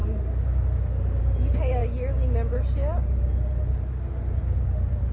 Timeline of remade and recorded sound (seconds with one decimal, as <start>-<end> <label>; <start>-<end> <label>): 0.0-5.1 recorded